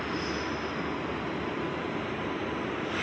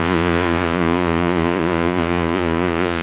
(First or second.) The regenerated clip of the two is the second